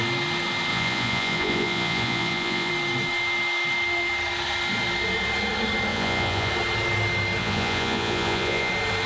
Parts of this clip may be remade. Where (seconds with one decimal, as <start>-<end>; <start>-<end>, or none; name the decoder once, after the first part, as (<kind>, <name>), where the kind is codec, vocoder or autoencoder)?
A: 0.7-2.7 (vocoder, Vocos); 5.9-6.5; 7.4-8.7